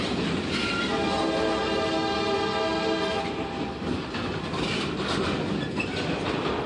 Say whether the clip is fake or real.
real